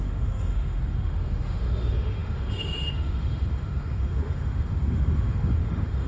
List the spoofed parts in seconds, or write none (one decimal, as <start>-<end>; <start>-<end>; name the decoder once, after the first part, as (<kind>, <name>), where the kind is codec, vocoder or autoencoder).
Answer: 0.0-6.1 (autoencoder, DAC-VAE)